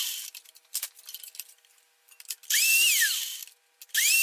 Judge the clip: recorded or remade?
recorded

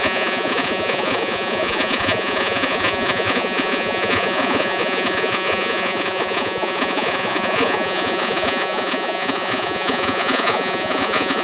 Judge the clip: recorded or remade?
remade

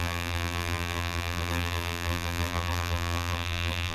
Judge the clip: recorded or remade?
remade